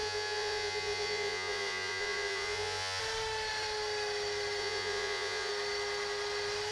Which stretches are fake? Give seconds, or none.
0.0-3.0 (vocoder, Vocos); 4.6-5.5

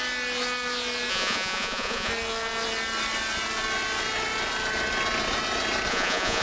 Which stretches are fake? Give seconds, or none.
1.1-2.1 (vocoder, Vocos); 5.9-6.4

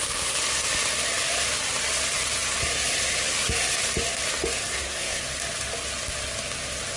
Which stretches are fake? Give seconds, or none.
4.7-5.2 (codec, SNAC)

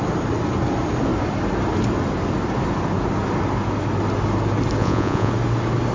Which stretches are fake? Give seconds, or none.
4.8-5.3 (vocoder, Vocos)

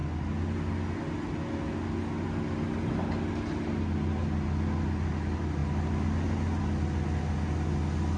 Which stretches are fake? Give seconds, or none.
none

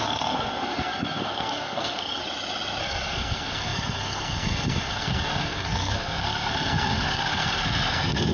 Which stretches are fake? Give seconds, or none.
0.0-2.2 (codec, SNAC); 2.8-8.3

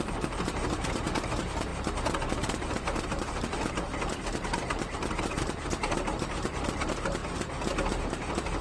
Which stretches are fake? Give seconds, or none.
0.0-7.2 (vocoder, BigVGAN v2); 8.0-8.6

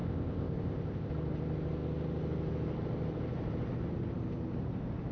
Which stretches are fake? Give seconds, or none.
0.0-1.1 (codec, ZipCodec)